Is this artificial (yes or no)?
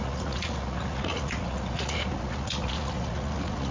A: yes